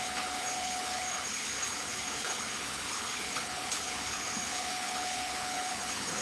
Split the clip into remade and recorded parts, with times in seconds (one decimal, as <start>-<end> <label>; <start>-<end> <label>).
0.0-6.2 remade